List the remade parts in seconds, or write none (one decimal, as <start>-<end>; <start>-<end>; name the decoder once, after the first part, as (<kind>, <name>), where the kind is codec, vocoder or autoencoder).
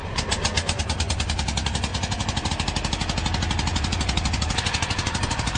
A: 0.0-0.8 (vocoder, Vocos); 1.9-2.5; 3.7-5.6